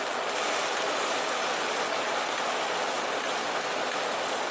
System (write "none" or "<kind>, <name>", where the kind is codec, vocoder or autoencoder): none